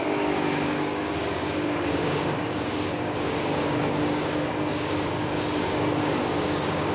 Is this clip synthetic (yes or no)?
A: yes